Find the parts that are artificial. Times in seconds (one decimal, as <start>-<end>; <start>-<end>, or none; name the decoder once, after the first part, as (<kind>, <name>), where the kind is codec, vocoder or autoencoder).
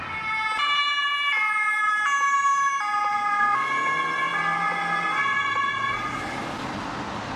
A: none